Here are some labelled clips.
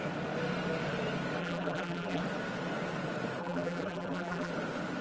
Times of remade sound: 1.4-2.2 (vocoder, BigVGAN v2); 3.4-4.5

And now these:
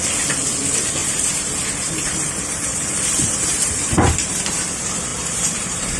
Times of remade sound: 1.0-4.6 (vocoder, BigVGAN v2); 5.1-6.0

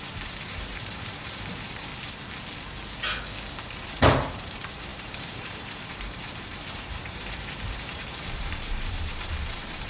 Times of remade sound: 0.0-1.9 (vocoder, BigVGAN v2); 3.8-9.9

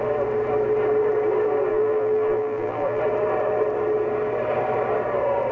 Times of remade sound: 1.7-3.0 (vocoder, BigVGAN v2)

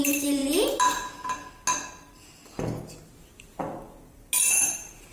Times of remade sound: 0.0-0.4 (vocoder, BigVGAN v2); 3.2-3.6; 4.6-5.1